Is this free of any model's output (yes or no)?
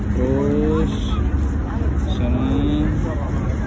yes